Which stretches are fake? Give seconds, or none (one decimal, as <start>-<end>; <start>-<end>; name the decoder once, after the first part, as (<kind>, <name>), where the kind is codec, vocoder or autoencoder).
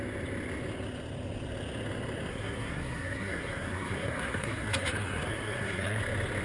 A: 2.3-6.0 (codec, SNAC)